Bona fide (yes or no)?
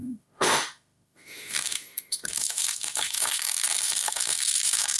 no